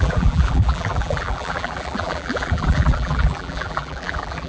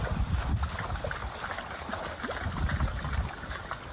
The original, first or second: second